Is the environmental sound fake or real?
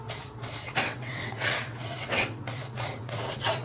fake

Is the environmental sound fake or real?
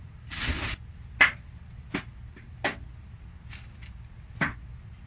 real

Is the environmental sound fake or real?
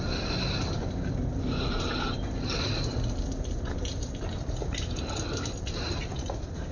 real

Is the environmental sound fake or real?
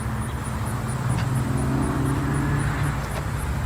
real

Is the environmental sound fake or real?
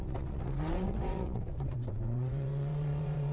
fake